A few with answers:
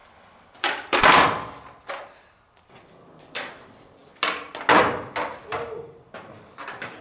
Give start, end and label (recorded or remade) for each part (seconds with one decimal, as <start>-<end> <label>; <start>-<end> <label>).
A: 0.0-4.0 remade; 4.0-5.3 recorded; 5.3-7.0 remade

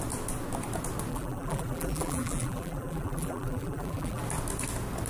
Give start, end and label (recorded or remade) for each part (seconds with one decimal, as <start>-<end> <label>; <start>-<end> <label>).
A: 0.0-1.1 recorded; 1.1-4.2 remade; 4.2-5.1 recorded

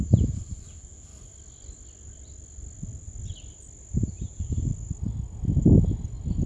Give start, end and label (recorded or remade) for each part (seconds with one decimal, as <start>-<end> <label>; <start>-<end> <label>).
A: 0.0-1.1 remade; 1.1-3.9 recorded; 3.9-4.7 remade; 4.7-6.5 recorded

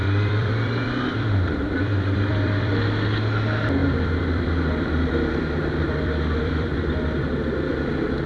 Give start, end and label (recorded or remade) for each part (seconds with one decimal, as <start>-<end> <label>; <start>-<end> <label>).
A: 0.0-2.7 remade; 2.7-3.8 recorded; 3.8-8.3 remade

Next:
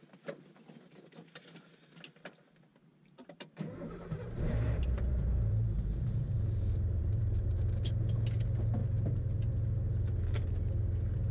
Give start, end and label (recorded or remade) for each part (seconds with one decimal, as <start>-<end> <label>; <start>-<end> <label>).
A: 0.0-2.9 recorded; 2.9-7.5 remade; 7.5-8.8 recorded; 8.8-9.5 remade; 9.5-11.3 recorded

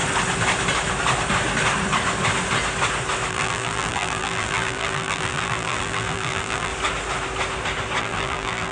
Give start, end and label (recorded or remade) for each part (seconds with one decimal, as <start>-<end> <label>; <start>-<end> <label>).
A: 0.0-3.3 recorded; 3.3-6.7 remade; 6.7-8.0 recorded; 8.0-8.7 remade

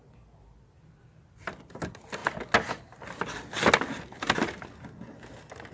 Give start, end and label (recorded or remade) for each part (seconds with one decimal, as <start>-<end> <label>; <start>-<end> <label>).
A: 0.0-5.7 recorded